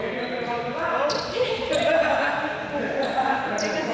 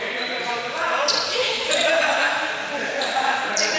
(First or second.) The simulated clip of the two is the second